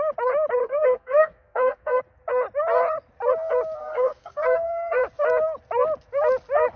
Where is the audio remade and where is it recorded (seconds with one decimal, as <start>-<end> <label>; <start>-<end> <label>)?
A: 0.0-0.6 recorded; 0.6-2.0 remade; 2.0-3.8 recorded; 3.8-5.0 remade; 5.0-6.8 recorded